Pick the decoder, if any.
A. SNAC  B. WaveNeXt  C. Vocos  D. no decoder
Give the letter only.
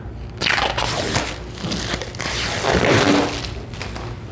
D